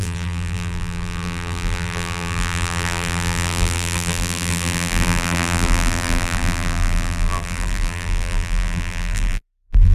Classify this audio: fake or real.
fake